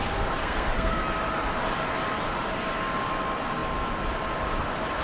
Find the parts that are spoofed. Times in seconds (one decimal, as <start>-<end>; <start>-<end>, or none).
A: 0.4-1.0